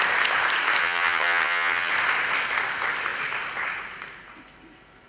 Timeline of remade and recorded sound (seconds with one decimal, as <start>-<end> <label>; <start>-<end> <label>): 0.0-0.8 recorded; 0.8-1.9 remade; 1.9-5.1 recorded